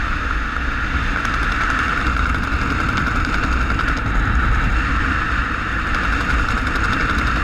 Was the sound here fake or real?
real